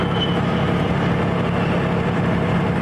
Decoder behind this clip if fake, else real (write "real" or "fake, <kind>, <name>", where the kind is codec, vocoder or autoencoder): real